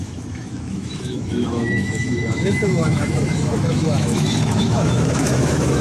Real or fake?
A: fake